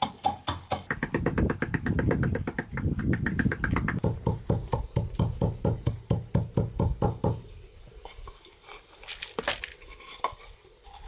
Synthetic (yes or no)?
no